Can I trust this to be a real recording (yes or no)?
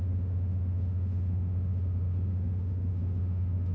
no